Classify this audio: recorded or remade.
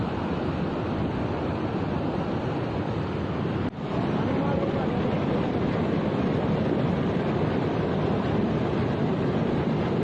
recorded